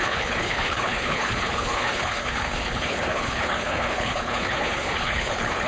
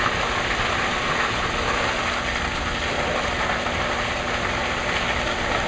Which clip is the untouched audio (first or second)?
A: second